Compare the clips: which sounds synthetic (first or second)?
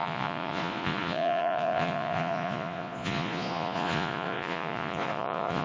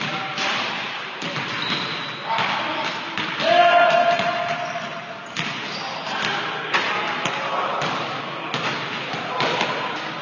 first